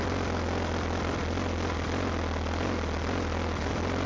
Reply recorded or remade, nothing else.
recorded